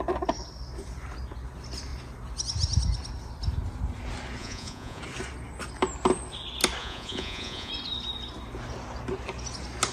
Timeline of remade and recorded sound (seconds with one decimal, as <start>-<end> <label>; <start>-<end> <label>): 0.0-4.4 recorded; 4.4-5.0 remade; 5.0-6.8 recorded; 6.8-7.7 remade; 7.7-9.9 recorded